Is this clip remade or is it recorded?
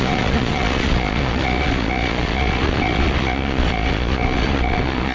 remade